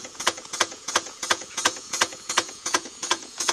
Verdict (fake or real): fake